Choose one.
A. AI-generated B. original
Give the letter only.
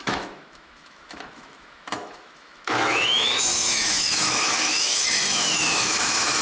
A